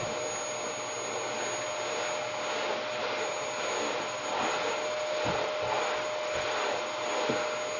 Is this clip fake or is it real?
real